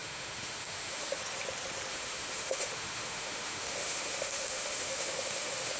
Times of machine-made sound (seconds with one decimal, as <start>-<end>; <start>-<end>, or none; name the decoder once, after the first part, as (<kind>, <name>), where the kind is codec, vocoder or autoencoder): 0.0-1.2 (autoencoder, DAC-VAE); 1.9-5.8